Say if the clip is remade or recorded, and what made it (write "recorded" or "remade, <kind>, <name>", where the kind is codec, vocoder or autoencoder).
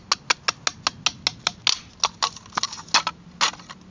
recorded